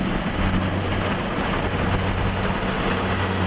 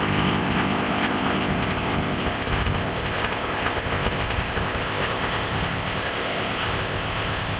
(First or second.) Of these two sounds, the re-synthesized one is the second